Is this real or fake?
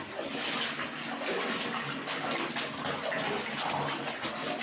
real